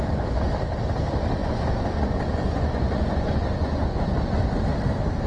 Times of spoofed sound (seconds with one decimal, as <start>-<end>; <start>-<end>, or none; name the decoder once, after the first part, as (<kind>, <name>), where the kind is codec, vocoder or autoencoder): 1.4-4.6 (vocoder, Vocos)